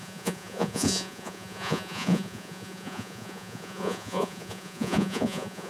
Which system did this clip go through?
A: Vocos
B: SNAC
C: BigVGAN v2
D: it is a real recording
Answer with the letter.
A